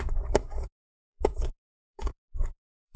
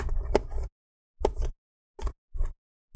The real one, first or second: second